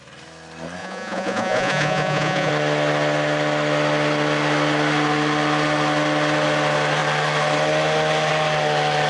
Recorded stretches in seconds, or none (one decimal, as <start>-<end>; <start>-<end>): 0.0-0.8; 2.5-9.1